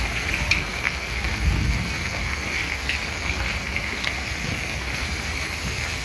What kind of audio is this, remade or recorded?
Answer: remade